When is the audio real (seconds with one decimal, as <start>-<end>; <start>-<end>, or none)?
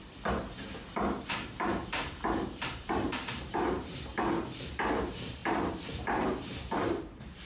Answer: 0.0-1.3; 4.1-4.7